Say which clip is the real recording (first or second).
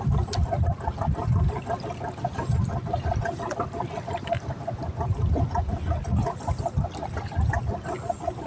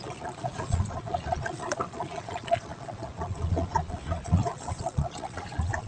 first